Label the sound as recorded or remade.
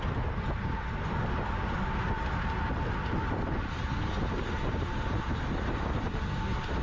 recorded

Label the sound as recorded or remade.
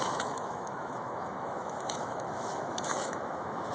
remade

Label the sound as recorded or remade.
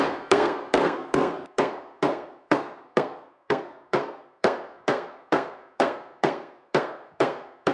remade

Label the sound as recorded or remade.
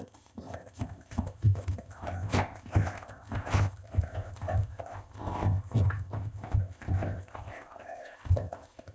remade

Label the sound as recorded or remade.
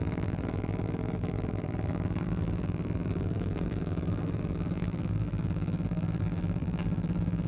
remade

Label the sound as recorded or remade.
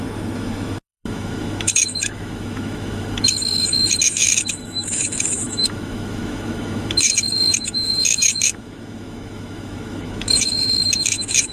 remade